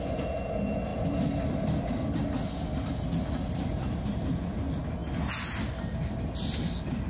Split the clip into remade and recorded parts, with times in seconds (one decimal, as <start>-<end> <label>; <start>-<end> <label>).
0.0-0.9 recorded; 0.9-2.7 remade; 2.7-7.1 recorded